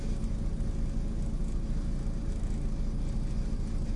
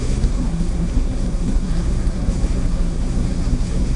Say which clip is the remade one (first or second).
second